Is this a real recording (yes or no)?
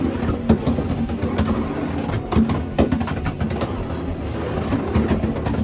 yes